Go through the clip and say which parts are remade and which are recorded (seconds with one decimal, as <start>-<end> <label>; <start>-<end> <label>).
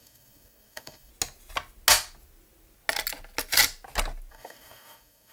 0.0-1.1 remade; 1.1-4.3 recorded; 4.3-5.3 remade